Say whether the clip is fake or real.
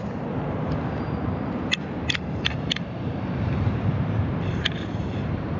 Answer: fake